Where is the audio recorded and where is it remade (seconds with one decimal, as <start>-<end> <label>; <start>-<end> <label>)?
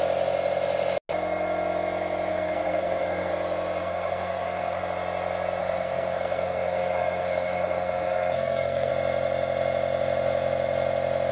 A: 0.0-2.3 recorded; 2.3-3.3 remade; 3.3-3.8 recorded; 3.8-4.8 remade; 4.8-5.6 recorded; 5.6-8.9 remade; 8.9-11.3 recorded